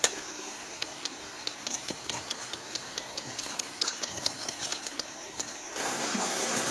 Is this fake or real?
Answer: fake